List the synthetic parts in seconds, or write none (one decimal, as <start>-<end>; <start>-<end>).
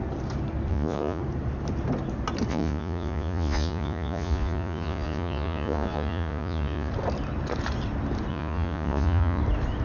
0.7-1.2; 2.5-6.9; 8.3-9.4